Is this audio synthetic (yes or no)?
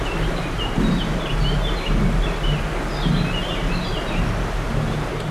no